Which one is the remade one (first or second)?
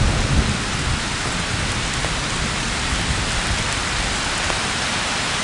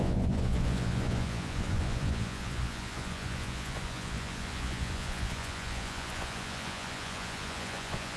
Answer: second